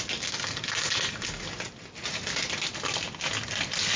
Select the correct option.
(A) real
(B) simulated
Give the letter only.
A